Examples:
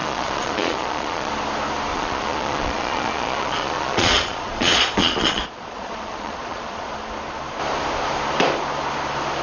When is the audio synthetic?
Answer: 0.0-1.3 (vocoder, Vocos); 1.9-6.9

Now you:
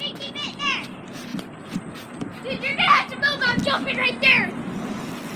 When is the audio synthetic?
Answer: 0.0-1.3 (vocoder, BigVGAN v2); 4.5-5.4

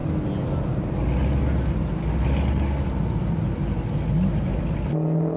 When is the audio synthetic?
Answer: none

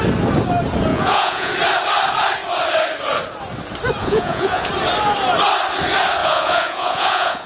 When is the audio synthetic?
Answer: 0.9-1.5 (vocoder, Vocos); 4.0-4.7; 6.2-7.5

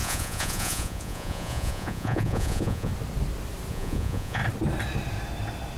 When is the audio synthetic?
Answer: 0.0-2.9 (vocoder, Vocos); 3.7-4.4